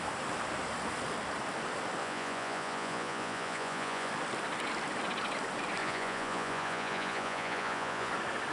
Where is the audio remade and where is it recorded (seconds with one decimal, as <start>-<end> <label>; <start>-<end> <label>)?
0.0-2.0 recorded; 2.0-4.1 remade; 4.1-5.8 recorded; 5.8-8.1 remade; 8.1-8.5 recorded